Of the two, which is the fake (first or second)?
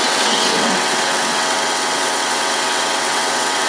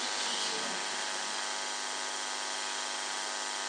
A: first